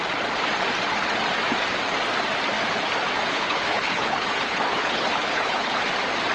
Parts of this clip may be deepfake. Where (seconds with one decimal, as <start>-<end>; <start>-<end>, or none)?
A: 3.3-5.8